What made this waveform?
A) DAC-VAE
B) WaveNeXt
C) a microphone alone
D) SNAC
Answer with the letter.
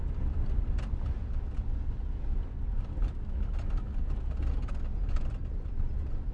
C